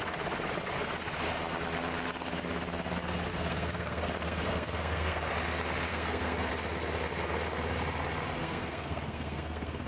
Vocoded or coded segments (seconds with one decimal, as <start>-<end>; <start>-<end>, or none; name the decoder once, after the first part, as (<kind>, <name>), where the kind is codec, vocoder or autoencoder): 3.3-5.3 (codec, SNAC); 5.9-6.5; 8.4-9.9